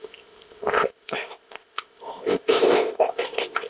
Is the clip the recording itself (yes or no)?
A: no